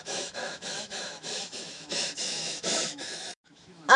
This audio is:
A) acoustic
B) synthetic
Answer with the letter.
B